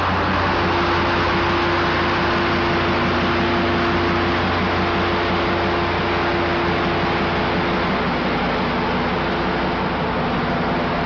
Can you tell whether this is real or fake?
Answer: real